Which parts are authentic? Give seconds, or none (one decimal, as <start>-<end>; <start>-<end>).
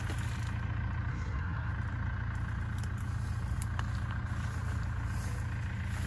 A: 0.0-1.1; 1.7-6.1